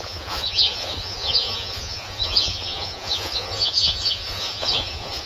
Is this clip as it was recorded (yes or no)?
no